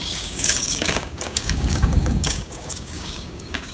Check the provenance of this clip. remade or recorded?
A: remade